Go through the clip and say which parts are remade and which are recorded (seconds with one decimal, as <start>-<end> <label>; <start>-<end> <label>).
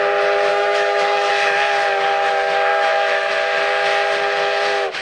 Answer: 0.0-0.5 recorded; 0.5-1.3 remade; 1.3-2.7 recorded; 2.7-3.3 remade; 3.3-5.0 recorded